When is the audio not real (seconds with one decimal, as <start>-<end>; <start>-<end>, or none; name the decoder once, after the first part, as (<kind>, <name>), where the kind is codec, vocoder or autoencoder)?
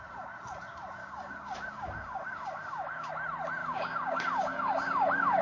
1.0-3.1 (codec, DAC); 3.6-5.4